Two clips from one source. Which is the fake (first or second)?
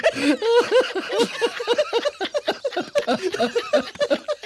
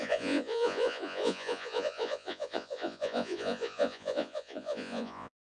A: second